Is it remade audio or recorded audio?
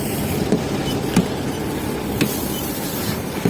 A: remade